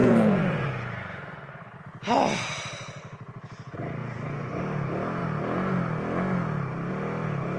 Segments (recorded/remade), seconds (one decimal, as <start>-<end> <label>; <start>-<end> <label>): 0.0-1.8 remade; 1.8-4.0 recorded; 4.0-4.6 remade; 4.6-7.6 recorded